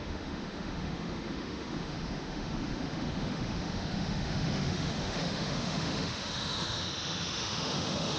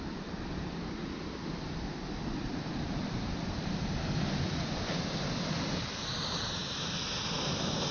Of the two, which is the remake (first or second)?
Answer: first